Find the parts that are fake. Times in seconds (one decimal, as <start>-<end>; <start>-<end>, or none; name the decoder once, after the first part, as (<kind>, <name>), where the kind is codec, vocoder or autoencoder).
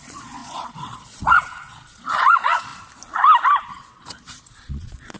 0.0-2.7 (vocoder, Vocos); 3.7-5.2